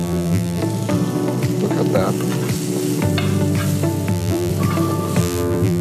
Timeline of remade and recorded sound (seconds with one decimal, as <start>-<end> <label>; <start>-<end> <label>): 0.0-0.6 remade; 0.6-4.1 recorded; 4.1-4.5 remade; 4.5-5.2 recorded; 5.2-5.8 remade